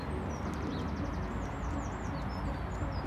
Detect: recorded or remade recorded